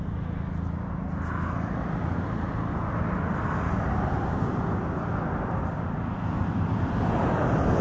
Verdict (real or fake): real